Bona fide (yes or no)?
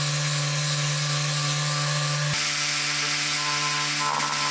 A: yes